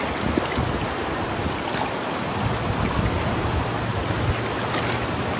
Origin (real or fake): real